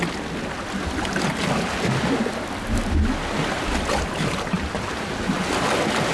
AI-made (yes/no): no